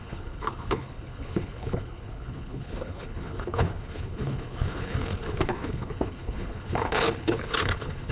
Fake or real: fake